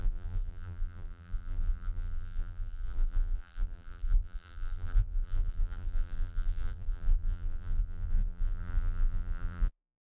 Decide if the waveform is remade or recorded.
remade